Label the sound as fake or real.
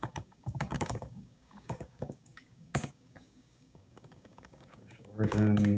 fake